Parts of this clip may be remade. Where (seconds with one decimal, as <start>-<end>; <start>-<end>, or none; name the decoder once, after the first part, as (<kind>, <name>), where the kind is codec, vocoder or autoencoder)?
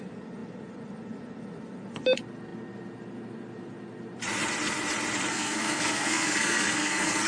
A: 5.3-7.3 (codec, SNAC)